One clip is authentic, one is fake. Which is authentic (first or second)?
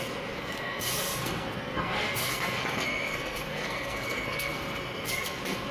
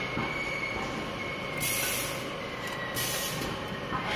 second